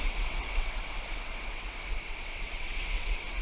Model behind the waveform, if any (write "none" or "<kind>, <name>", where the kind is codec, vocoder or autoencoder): vocoder, WaveNeXt